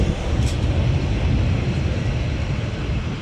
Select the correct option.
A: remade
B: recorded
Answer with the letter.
B